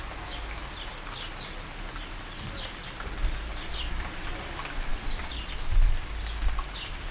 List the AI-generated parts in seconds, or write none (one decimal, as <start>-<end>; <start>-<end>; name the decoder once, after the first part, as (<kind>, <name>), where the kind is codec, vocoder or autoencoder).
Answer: none